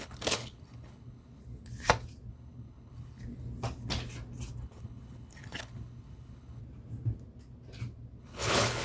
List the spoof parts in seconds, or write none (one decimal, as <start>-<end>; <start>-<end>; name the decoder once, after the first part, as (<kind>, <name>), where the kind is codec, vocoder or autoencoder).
0.0-1.4 (codec, HILCodec); 2.3-3.2; 4.6-6.6; 8.2-8.8